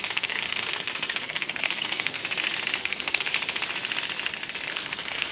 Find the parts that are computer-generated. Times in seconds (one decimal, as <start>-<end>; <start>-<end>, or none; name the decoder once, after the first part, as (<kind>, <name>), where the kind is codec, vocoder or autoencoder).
0.0-2.2 (codec, SNAC); 2.8-3.3; 4.7-5.3